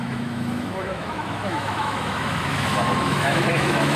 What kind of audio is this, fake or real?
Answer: fake